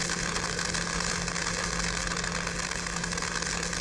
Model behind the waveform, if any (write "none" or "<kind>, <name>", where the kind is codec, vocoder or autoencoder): none